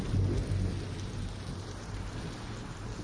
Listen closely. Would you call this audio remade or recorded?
recorded